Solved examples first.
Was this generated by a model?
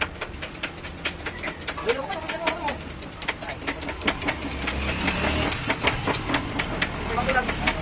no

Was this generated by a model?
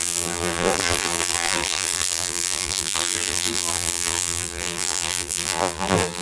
yes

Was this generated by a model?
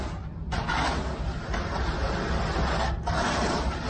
no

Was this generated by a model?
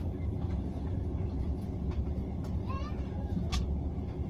yes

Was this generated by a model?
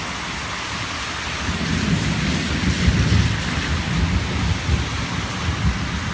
no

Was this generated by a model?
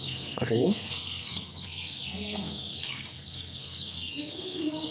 yes